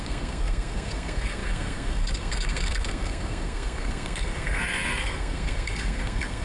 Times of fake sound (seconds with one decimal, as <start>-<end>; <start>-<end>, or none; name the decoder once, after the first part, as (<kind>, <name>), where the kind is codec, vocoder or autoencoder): 0.0-6.4 (codec, SNAC)